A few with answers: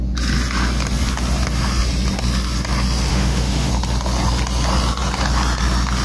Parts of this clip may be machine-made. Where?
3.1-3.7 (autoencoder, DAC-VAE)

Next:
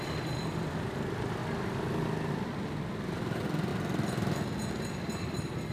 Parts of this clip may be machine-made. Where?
0.0-1.4 (vocoder, BigVGAN v2); 2.3-3.7; 4.7-5.7

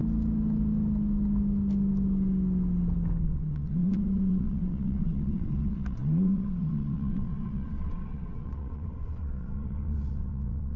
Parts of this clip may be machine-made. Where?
3.2-10.8 (vocoder, WaveNeXt)

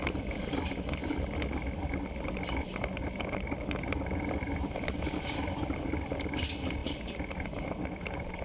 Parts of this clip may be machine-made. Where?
none

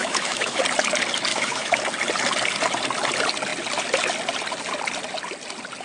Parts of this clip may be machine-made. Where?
0.0-0.6 (autoencoder, DAC-VAE); 1.3-1.8